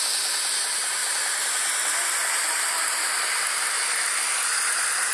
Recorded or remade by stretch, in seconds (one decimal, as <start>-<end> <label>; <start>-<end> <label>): 0.0-5.1 recorded